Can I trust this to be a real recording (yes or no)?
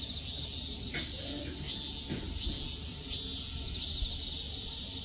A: yes